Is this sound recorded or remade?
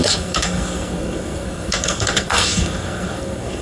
remade